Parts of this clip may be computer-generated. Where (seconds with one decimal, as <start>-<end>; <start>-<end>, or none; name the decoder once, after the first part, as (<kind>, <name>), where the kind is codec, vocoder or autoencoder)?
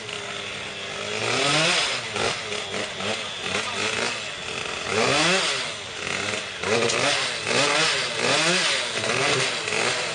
none